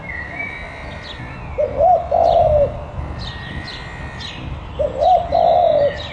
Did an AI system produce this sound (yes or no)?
no